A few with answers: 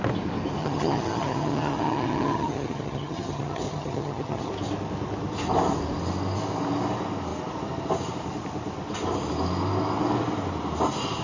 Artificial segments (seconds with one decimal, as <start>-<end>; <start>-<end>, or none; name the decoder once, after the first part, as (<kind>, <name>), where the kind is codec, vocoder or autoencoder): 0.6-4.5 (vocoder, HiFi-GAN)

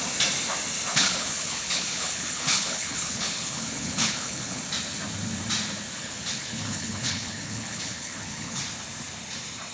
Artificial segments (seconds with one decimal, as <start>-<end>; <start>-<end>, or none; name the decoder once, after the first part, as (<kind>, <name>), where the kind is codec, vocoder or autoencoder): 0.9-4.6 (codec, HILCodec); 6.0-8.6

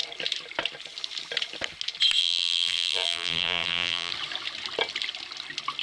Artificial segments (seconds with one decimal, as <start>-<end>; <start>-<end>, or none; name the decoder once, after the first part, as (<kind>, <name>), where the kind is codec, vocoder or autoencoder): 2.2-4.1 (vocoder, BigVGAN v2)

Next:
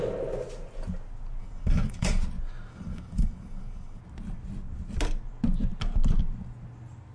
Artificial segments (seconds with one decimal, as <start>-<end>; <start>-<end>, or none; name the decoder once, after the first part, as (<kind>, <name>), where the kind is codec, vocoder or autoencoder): 1.4-2.1 (codec, DAC); 2.7-4.0

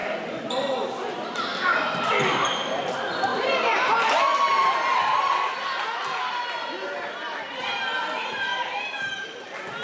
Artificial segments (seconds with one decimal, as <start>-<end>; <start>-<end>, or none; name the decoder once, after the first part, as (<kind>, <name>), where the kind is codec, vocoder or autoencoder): 0.0-1.8 (vocoder, BigVGAN v2); 3.3-4.2

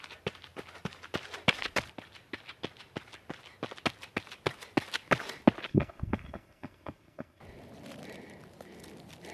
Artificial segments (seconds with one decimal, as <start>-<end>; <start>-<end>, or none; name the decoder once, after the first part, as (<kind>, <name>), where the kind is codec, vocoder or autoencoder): 5.7-7.4 (codec, SNAC)

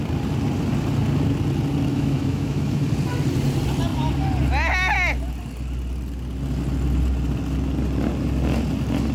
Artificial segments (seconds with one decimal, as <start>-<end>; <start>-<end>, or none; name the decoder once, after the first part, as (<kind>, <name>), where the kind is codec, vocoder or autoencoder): 1.9-2.9 (autoencoder, DAC-VAE)